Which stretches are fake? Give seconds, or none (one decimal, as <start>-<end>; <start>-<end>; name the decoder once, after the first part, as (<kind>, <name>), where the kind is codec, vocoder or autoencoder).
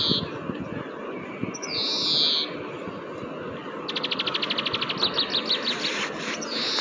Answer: none